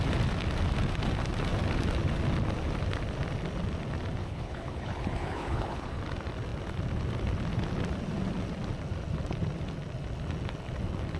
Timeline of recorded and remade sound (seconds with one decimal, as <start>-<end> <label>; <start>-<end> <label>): 0.0-4.2 recorded; 4.2-6.0 remade; 6.0-11.2 recorded